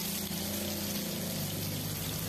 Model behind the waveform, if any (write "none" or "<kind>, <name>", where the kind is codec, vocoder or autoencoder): none